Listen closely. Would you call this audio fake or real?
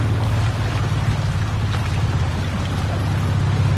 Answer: real